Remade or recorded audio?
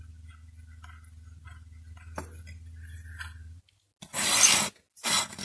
recorded